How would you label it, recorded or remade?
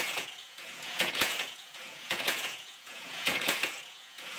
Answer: remade